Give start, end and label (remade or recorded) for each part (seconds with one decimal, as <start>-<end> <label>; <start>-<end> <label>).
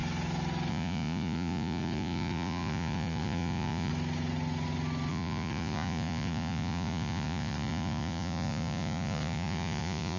0.0-0.7 recorded; 0.7-3.9 remade; 3.9-5.1 recorded; 5.1-10.2 remade